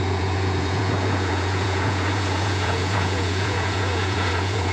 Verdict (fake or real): fake